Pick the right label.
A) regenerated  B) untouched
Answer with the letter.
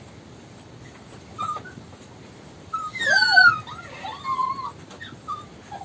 B